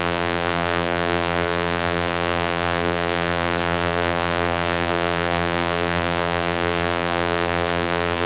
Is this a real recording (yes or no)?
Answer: no